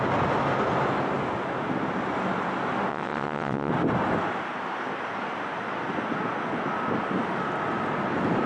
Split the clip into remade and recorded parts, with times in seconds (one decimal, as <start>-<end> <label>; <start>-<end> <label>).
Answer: 0.0-2.9 recorded; 2.9-3.7 remade; 3.7-8.5 recorded